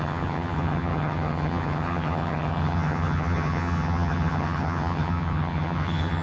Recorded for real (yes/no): no